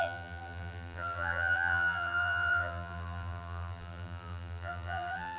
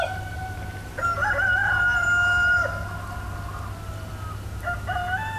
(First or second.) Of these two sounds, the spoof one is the first